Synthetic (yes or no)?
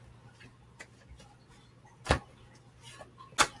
no